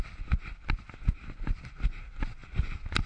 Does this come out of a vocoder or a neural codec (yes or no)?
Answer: no